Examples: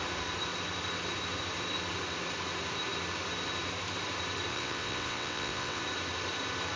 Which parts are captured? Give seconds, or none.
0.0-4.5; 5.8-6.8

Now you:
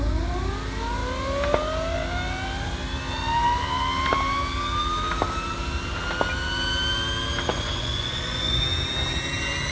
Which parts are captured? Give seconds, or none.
0.0-7.5; 8.6-9.7

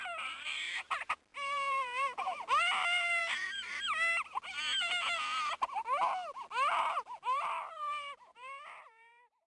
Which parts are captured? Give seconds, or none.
3.7-6.8

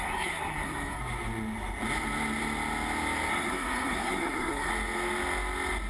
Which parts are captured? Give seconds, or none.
1.0-3.3; 4.7-5.9